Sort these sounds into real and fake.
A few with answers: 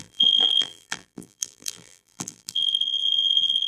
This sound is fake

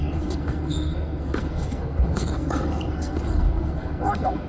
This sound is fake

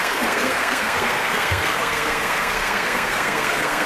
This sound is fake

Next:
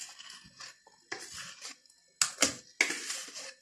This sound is real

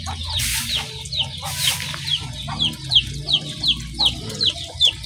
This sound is real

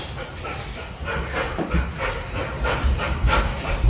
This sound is real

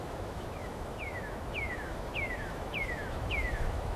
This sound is fake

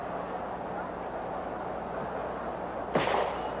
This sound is real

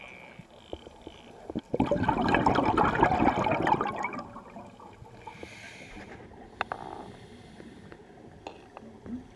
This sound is real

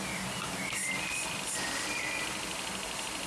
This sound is real